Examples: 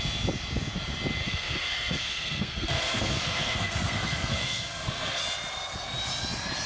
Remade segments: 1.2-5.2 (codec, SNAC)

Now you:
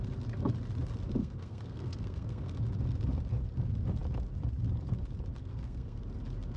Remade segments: 1.2-2.6 (codec, SNAC); 5.4-6.0

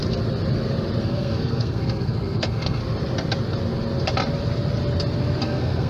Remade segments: 1.0-2.8 (codec, SNAC); 5.4-5.9